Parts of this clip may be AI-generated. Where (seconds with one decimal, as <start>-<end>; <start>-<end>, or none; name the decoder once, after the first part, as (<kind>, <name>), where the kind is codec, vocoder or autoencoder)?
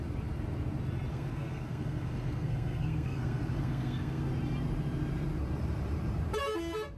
1.1-4.3 (codec, SNAC)